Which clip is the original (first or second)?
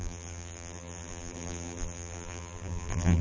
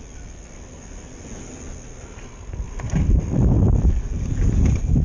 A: second